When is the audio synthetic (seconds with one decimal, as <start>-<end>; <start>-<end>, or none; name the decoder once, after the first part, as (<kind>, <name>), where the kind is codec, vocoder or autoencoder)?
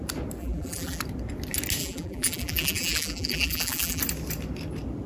0.4-1.0 (vocoder, BigVGAN v2); 1.8-4.0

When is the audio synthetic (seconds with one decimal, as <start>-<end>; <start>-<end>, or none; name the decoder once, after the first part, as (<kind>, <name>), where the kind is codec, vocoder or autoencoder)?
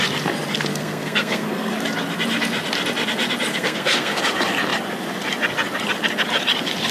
0.7-1.7 (codec, SNAC); 3.5-4.2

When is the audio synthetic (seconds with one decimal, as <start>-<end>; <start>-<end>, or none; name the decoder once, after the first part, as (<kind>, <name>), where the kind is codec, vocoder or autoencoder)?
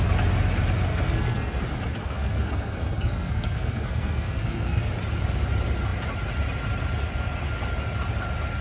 0.9-1.6 (codec, SNAC); 2.0-4.9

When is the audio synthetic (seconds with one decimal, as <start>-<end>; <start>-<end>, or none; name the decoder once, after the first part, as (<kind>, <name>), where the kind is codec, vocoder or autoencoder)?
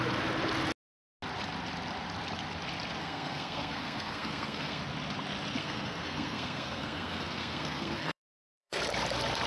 3.0-4.8 (codec, SNAC); 5.6-8.8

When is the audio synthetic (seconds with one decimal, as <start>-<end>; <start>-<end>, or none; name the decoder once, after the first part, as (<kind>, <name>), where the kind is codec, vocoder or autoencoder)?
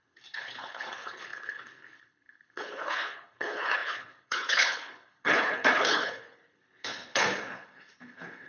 0.0-8.5 (codec, HILCodec)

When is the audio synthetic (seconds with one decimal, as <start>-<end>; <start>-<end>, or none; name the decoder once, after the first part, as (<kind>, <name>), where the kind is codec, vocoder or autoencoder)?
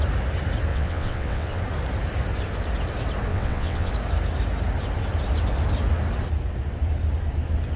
0.7-1.6 (vocoder, WaveNeXt); 3.3-3.9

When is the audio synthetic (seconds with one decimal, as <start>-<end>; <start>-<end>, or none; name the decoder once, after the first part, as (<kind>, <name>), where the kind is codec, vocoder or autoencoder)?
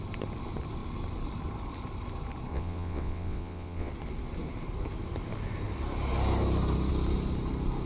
2.5-3.9 (vocoder, WaveNeXt)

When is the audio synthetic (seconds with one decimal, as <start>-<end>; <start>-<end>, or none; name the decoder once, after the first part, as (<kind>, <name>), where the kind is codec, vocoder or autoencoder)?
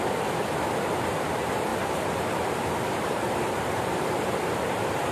1.7-5.1 (vocoder, BigVGAN v2)